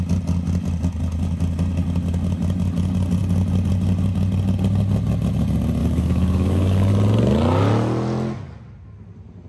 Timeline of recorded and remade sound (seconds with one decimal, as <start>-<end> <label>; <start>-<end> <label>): 0.0-5.8 recorded; 5.8-6.9 remade; 6.9-9.5 recorded